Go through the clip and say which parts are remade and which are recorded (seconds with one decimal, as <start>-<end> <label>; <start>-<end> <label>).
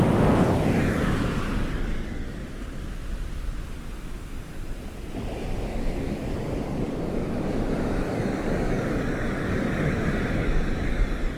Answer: 0.0-2.4 remade; 2.4-5.6 recorded; 5.6-11.4 remade